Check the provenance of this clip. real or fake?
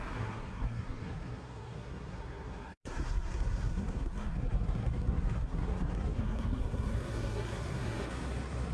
fake